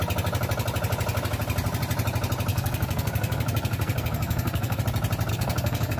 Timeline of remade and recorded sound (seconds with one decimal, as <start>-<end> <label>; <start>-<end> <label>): 0.0-2.5 recorded; 2.5-4.8 remade; 4.8-5.3 recorded; 5.3-6.0 remade